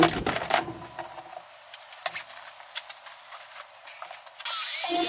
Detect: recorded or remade recorded